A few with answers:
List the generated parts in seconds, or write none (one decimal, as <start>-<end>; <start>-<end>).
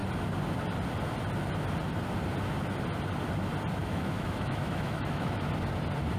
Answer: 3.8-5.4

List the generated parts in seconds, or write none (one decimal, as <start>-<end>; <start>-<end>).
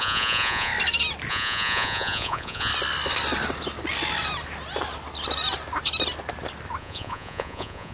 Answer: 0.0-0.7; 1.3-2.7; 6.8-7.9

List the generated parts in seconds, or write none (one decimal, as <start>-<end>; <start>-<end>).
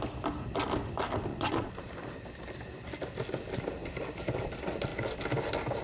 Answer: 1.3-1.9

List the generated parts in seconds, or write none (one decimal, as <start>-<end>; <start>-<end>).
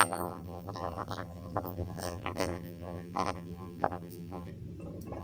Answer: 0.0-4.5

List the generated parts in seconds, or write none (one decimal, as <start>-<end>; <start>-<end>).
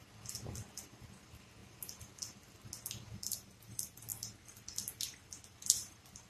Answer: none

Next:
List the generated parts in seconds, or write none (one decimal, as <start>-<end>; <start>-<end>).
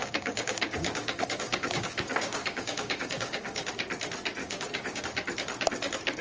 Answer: 0.0-3.7; 4.4-5.0